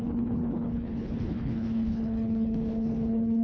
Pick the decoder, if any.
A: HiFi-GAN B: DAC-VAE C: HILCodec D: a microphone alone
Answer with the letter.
C